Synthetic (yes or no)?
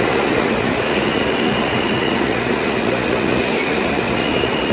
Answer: yes